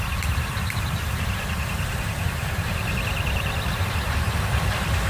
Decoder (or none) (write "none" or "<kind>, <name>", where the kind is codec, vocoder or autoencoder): vocoder, BigVGAN v2